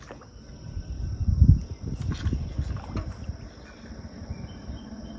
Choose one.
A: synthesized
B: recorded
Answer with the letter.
B